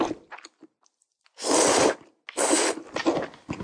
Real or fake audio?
real